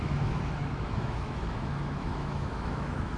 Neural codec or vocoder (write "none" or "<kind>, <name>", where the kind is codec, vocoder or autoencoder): autoencoder, DAC-VAE